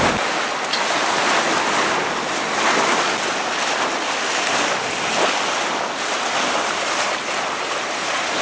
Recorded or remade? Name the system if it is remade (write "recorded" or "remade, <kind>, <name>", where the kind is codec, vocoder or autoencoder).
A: recorded